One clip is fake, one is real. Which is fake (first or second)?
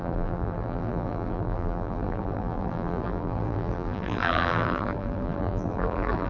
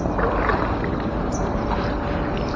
first